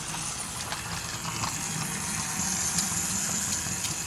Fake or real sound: real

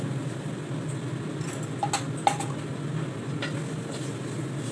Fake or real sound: real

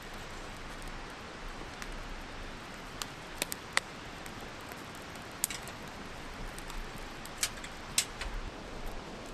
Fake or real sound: real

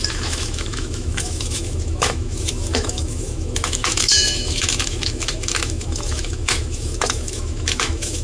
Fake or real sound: fake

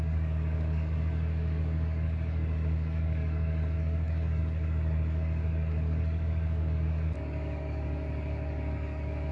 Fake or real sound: fake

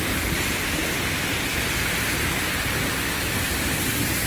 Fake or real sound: real